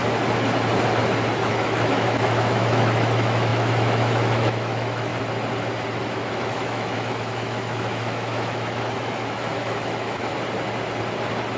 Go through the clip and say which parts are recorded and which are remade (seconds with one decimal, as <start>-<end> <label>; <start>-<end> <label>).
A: 0.0-1.5 recorded; 1.5-5.1 remade; 5.1-6.3 recorded; 6.3-10.3 remade; 10.3-11.6 recorded